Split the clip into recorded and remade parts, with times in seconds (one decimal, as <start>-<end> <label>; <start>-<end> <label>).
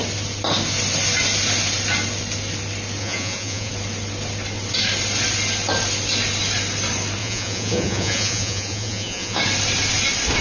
0.0-3.0 recorded; 3.0-3.7 remade; 3.7-7.2 recorded; 7.2-9.4 remade; 9.4-10.4 recorded